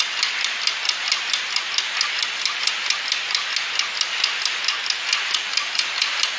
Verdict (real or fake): real